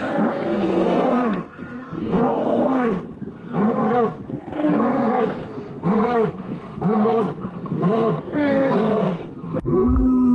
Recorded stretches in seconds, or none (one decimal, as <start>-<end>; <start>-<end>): none